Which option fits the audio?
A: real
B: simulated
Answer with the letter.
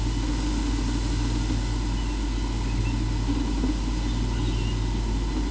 A